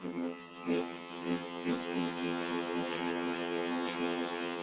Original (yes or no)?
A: no